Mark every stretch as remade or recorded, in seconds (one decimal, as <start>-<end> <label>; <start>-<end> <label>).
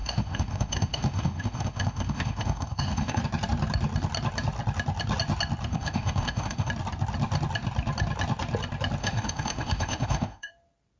0.0-3.2 remade; 3.2-5.7 recorded; 5.7-6.7 remade; 6.7-9.0 recorded; 9.0-10.5 remade; 10.5-11.0 recorded